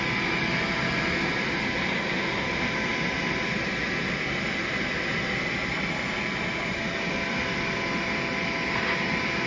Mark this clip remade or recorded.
recorded